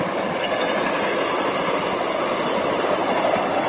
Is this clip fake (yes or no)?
no